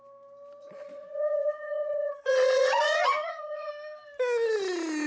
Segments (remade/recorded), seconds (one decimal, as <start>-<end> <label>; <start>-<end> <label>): 0.0-0.6 recorded; 0.6-3.7 remade; 3.7-5.1 recorded